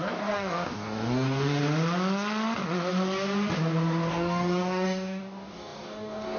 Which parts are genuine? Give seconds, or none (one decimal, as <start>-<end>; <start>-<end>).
1.6-4.1